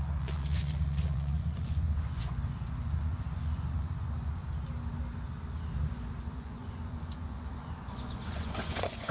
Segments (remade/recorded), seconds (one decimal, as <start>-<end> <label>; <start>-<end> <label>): 0.0-4.4 remade; 4.4-6.2 recorded; 6.2-9.1 remade